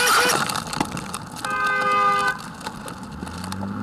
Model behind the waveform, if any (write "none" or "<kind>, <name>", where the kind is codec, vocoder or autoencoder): none